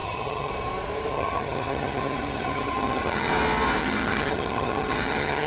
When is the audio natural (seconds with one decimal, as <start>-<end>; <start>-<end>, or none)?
0.5-1.1; 3.3-3.8